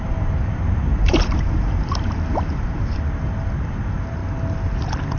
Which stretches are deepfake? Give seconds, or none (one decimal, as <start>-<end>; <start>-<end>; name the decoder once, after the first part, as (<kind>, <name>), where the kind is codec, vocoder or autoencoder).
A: 0.0-4.2 (vocoder, BigVGAN v2)